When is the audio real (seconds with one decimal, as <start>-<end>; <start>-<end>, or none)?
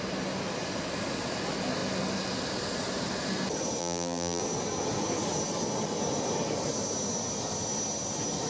0.0-3.8; 4.4-8.5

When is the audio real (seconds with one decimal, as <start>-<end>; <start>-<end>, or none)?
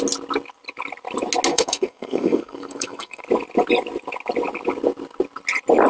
0.0-1.5; 3.2-5.9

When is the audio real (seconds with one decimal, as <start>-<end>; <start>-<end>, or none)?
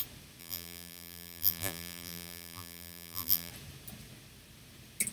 0.0-0.4; 3.5-5.1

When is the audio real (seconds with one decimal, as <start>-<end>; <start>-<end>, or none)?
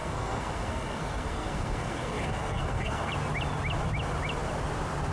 3.1-5.1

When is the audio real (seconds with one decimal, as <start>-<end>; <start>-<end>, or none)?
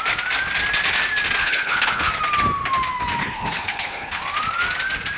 0.0-1.4; 2.1-3.2; 4.2-5.2